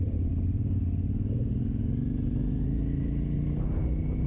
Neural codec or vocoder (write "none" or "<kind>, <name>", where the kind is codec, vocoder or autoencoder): none